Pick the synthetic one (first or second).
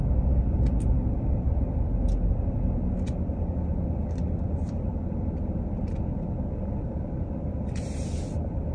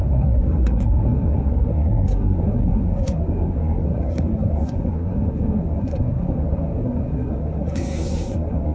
second